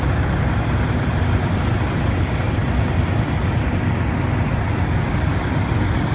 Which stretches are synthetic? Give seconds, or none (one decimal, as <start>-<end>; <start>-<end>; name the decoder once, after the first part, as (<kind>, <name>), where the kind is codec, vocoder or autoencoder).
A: none